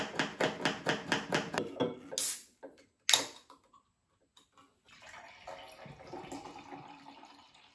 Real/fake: real